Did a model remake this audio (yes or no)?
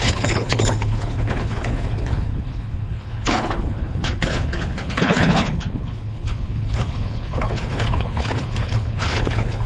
yes